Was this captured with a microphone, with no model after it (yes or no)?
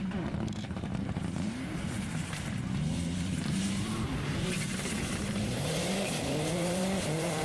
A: no